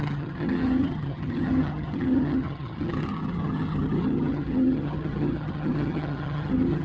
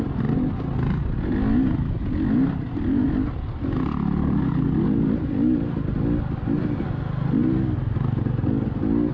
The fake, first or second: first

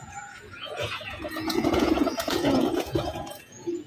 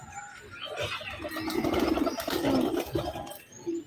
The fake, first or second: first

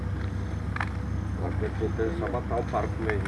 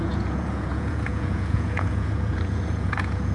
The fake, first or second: second